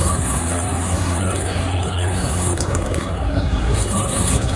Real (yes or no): no